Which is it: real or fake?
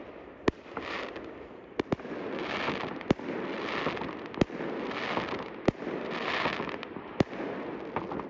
real